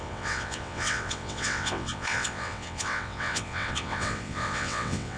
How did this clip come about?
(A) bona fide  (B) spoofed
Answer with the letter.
B